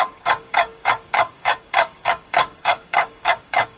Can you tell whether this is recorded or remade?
remade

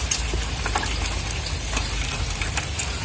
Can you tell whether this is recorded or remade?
recorded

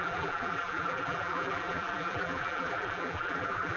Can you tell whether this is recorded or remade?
remade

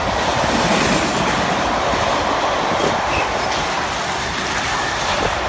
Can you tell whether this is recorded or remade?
recorded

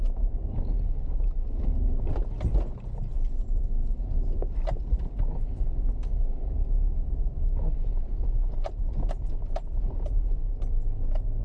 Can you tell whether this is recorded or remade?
recorded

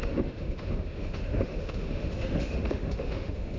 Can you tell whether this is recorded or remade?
remade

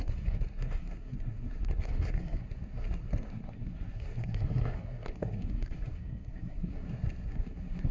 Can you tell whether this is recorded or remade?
remade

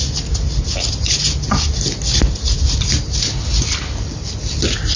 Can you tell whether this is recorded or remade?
recorded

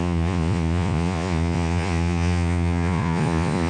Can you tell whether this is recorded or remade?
remade